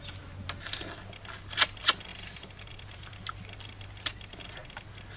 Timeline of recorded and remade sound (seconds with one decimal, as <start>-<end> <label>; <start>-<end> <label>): 0.0-2.1 recorded; 2.1-3.1 remade; 3.1-5.2 recorded